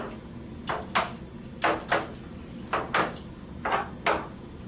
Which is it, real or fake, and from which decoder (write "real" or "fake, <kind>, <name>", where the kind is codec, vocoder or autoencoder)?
real